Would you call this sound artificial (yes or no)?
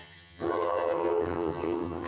yes